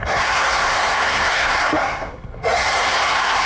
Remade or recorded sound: remade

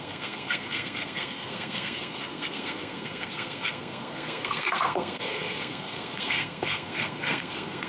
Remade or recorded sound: remade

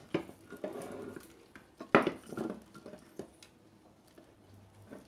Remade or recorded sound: recorded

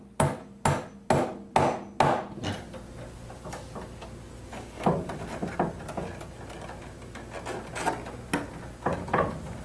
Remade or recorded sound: recorded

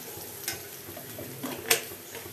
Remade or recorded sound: recorded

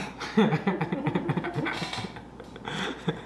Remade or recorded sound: recorded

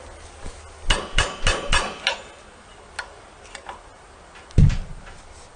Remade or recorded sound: recorded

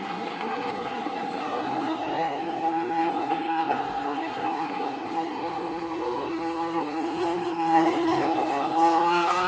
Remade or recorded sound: remade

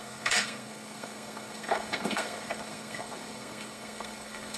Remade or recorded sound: remade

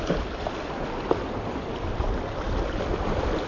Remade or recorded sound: recorded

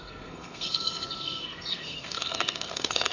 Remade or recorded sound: remade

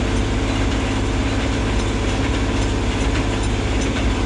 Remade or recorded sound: recorded